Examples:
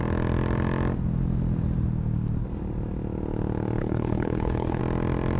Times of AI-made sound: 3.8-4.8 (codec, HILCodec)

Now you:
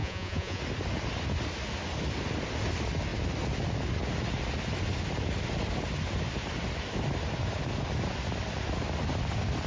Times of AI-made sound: 0.0-0.6 (vocoder, Vocos)

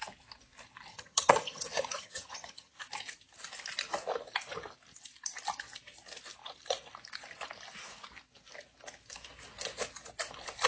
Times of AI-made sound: 0.9-2.8 (vocoder, HiFi-GAN)

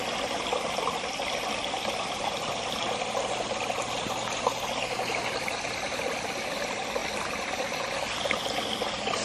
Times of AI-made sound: none

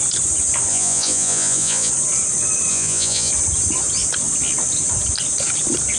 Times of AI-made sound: 0.7-1.9 (vocoder, Vocos); 2.7-3.3